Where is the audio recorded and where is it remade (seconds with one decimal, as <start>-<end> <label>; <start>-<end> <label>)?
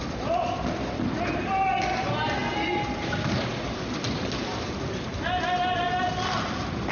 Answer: 0.0-6.9 recorded